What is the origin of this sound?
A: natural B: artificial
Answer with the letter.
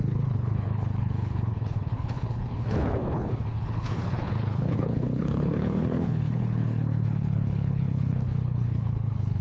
B